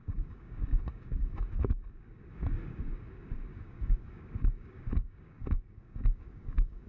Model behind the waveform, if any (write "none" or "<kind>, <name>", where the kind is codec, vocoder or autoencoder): codec, DAC